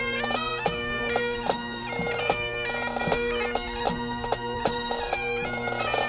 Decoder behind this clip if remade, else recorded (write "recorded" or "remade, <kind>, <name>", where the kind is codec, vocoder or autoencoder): remade, vocoder, BigVGAN v2